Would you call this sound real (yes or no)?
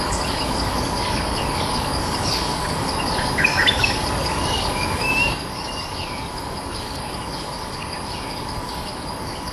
no